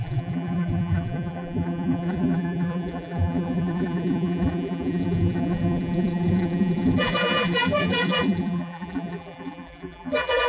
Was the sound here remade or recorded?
remade